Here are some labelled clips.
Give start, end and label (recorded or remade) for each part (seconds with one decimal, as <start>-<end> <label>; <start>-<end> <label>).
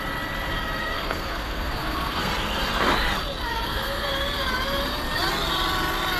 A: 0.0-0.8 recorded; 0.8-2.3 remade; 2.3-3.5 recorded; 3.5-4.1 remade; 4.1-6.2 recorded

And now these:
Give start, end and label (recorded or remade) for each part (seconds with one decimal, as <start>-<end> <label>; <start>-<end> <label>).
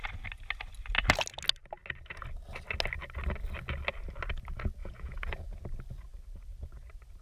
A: 0.0-4.8 recorded; 4.8-5.6 remade; 5.6-7.2 recorded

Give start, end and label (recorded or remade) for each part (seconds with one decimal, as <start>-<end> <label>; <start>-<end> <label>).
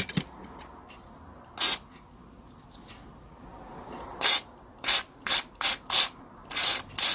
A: 0.0-3.5 recorded; 3.5-6.3 remade; 6.3-7.1 recorded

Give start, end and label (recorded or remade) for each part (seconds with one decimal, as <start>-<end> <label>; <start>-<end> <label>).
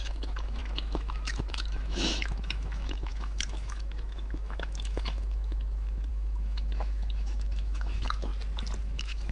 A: 0.0-8.3 remade; 8.3-8.8 recorded; 8.8-9.3 remade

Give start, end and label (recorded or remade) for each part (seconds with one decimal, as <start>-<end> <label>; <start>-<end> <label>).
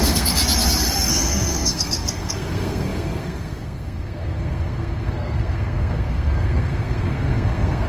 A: 0.0-0.4 remade; 0.4-1.1 recorded; 1.1-7.9 remade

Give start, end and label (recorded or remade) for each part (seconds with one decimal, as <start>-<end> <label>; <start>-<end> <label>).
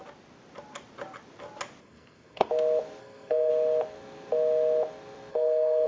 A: 0.0-1.8 recorded; 1.8-2.5 remade; 2.5-3.0 recorded; 3.0-3.5 remade; 3.5-5.3 recorded; 5.3-5.9 remade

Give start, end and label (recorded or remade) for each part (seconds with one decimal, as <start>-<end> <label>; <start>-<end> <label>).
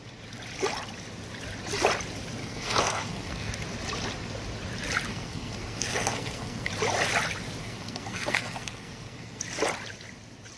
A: 0.0-2.4 recorded; 2.4-3.5 remade; 3.5-5.1 recorded; 5.1-6.7 remade; 6.7-7.6 recorded; 7.6-9.4 remade; 9.4-10.6 recorded